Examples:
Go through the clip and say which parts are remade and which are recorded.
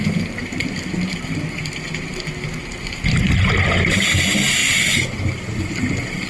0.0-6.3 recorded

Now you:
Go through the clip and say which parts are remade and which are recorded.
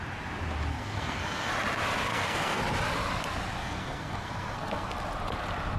0.0-0.7 recorded; 0.7-1.5 remade; 1.5-2.1 recorded; 2.1-2.6 remade; 2.6-3.6 recorded; 3.6-4.9 remade; 4.9-5.8 recorded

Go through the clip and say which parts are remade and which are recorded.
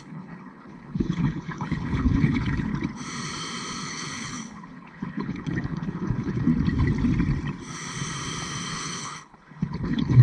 0.0-2.7 remade; 2.7-3.9 recorded; 3.9-6.5 remade; 6.5-8.7 recorded; 8.7-10.2 remade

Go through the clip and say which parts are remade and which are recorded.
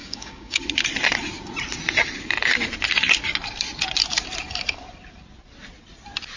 0.0-0.6 remade; 0.6-6.4 recorded